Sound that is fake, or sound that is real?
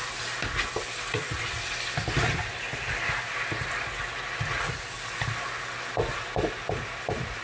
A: real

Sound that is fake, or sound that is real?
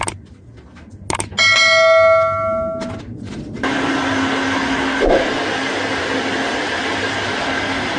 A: real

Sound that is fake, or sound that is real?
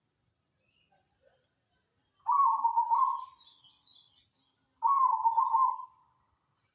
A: real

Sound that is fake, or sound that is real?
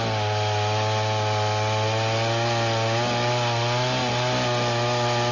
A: real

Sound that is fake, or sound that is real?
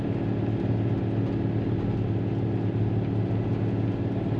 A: real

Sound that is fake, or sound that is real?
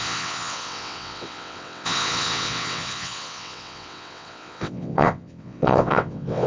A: fake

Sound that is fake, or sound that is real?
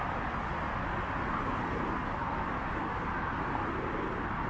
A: real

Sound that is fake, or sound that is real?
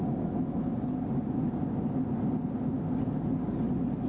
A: real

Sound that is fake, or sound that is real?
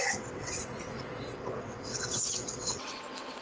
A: fake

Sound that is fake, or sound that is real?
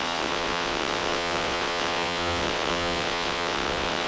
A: fake